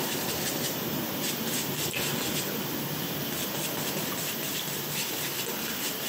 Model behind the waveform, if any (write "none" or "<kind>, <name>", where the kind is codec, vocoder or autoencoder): none